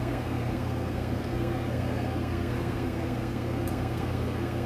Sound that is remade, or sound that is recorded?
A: remade